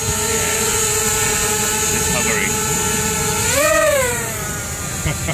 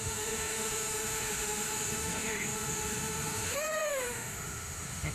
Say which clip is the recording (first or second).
first